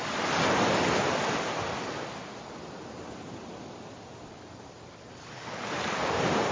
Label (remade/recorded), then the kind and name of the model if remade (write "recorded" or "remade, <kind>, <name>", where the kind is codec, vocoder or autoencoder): recorded